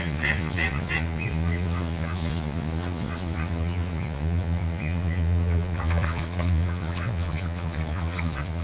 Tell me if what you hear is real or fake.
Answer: fake